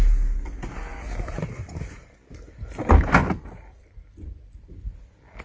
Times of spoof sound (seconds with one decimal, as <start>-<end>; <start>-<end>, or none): 3.2-4.7